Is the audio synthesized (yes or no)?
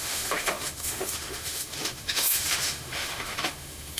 yes